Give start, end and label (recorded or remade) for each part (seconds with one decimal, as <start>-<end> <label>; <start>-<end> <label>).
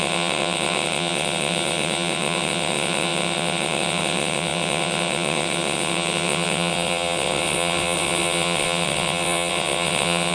0.0-10.3 remade